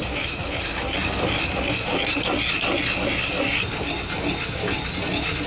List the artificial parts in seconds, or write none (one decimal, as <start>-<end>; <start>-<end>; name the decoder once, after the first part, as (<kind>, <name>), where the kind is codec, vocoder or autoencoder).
none

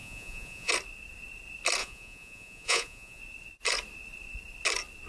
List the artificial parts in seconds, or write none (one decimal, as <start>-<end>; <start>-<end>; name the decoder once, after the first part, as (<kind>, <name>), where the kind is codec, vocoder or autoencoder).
0.0-0.7 (vocoder, Vocos); 1.8-3.2

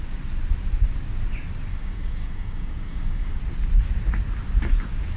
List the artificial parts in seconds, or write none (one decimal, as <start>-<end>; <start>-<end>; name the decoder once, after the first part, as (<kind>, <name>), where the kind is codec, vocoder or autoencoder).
1.7-3.4 (codec, DAC)

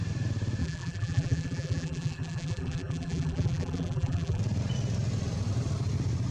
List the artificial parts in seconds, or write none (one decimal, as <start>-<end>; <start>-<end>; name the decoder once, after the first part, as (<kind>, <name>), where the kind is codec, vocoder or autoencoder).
0.6-4.4 (vocoder, BigVGAN v2)

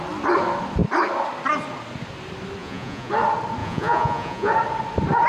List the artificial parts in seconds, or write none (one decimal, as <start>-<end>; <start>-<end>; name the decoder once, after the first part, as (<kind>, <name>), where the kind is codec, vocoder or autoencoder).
2.6-3.1 (vocoder, Vocos); 3.6-4.5

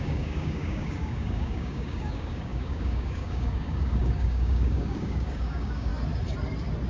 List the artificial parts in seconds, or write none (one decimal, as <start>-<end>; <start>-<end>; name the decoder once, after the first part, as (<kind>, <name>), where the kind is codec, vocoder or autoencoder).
0.0-5.9 (codec, DAC)

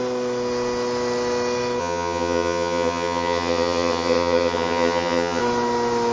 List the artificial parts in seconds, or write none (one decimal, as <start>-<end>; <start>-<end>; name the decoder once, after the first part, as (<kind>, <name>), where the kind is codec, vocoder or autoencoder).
1.8-5.4 (vocoder, HiFi-GAN)

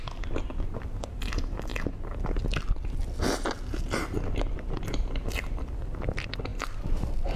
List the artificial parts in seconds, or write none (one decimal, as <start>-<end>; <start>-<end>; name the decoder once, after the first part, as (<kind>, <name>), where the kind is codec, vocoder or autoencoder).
0.0-1.7 (vocoder, BigVGAN v2); 5.0-7.4